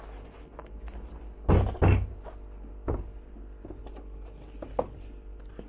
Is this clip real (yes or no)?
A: yes